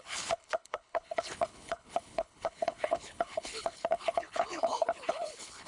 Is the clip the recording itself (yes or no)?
no